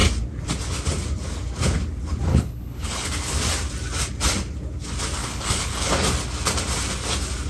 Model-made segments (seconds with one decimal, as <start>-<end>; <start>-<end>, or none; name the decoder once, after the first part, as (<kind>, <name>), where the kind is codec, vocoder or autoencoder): 2.3-3.1 (codec, HILCodec); 5.2-5.9